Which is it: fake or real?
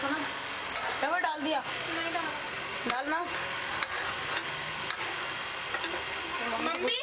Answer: real